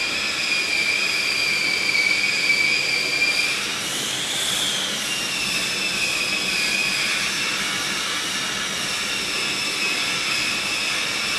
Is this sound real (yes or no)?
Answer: yes